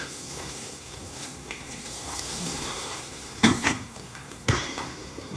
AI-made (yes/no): yes